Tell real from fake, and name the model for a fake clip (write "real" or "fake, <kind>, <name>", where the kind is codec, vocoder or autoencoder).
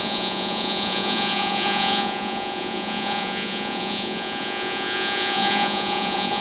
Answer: fake, vocoder, Vocos